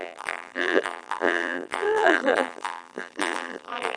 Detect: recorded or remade remade